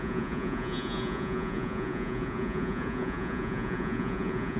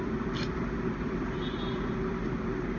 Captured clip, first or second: second